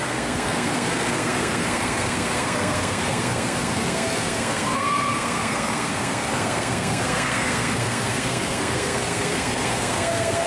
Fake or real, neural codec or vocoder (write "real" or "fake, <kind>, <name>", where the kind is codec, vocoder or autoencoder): fake, codec, SNAC